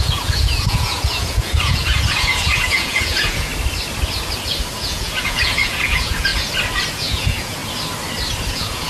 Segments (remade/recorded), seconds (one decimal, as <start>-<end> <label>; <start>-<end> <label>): 0.0-3.5 remade; 3.5-4.8 recorded; 4.8-6.3 remade; 6.3-6.9 recorded; 6.9-7.6 remade; 7.6-8.5 recorded; 8.5-8.9 remade